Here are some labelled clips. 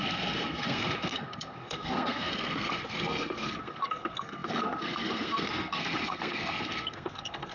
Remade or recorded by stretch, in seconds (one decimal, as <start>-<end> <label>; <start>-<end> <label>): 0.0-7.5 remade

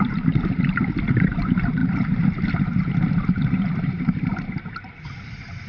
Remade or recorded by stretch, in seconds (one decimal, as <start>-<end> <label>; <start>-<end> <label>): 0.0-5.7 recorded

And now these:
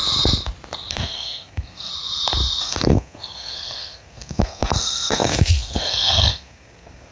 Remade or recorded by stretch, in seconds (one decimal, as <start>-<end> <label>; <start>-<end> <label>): 0.0-0.9 recorded; 0.9-1.9 remade; 1.9-2.6 recorded; 2.6-7.1 remade

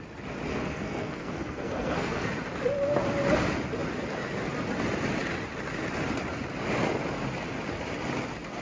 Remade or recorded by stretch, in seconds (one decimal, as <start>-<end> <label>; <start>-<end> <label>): 0.0-0.5 recorded; 0.5-2.3 remade; 2.3-8.6 recorded